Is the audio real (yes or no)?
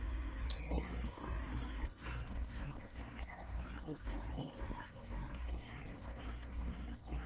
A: no